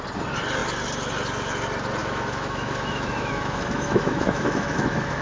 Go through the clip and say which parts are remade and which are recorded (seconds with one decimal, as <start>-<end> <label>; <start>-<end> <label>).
0.0-2.0 recorded; 2.0-5.2 remade